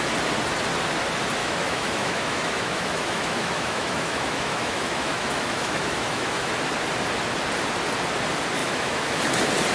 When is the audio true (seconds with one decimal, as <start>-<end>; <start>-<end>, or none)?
0.0-1.4; 6.5-8.6; 9.2-9.7